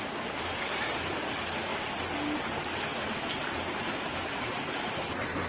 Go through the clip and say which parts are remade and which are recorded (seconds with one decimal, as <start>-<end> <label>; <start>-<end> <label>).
0.0-5.5 recorded